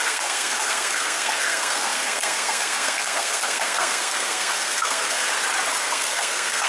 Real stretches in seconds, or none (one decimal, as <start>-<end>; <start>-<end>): 5.3-5.8